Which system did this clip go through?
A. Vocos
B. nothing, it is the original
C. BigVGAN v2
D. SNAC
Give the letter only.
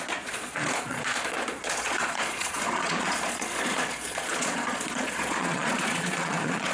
A